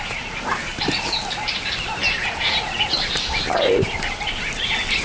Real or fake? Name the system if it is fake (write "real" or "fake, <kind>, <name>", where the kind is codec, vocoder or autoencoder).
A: real